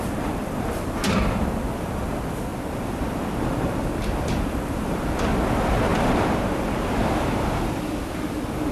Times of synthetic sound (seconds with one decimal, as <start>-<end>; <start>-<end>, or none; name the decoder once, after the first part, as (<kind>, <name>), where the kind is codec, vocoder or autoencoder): 2.5-5.2 (vocoder, BigVGAN v2)

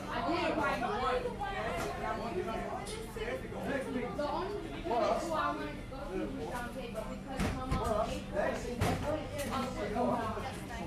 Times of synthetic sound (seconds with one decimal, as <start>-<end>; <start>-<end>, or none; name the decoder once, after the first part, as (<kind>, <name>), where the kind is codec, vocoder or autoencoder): 6.0-6.6 (autoencoder, DAC-VAE)

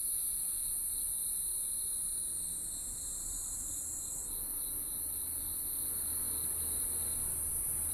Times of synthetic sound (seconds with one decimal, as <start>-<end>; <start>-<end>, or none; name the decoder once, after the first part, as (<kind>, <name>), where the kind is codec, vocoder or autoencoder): none

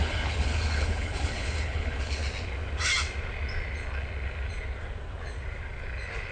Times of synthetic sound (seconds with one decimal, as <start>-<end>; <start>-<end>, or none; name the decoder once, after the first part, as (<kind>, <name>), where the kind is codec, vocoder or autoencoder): 0.0-2.2 (codec, HILCodec)

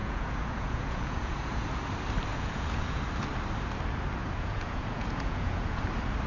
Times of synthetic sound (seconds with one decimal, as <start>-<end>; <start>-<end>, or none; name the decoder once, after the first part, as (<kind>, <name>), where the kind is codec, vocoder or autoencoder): 0.0-1.7 (vocoder, Vocos); 2.3-3.0; 4.2-5.8

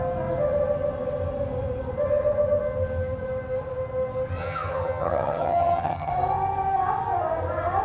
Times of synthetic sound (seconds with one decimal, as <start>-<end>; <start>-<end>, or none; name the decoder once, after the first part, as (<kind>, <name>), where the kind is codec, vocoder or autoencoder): 4.4-6.1 (vocoder, HiFi-GAN)

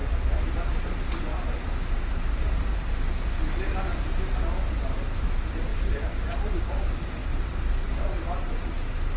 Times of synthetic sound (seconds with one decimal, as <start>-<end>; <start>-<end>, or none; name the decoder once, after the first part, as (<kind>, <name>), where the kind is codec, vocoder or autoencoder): 5.7-6.6 (vocoder, BigVGAN v2)

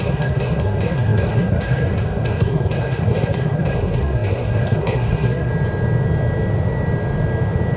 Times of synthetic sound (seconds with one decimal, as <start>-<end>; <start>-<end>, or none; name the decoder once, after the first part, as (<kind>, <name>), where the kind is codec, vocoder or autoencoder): 0.0-5.5 (codec, SNAC)